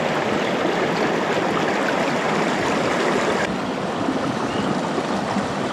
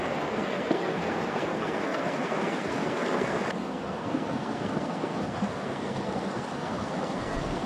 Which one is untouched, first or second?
first